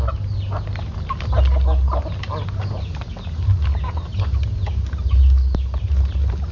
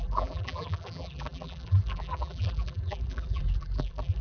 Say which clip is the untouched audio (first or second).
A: first